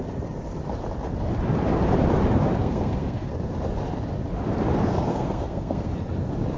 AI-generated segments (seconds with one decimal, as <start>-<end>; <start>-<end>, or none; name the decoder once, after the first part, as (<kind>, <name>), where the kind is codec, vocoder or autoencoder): 2.6-3.3 (codec, SNAC); 5.1-5.9